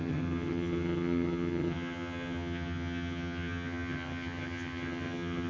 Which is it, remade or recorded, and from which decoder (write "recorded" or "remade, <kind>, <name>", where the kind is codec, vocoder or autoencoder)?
remade, vocoder, HiFi-GAN